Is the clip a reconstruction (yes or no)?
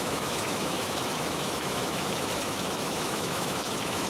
yes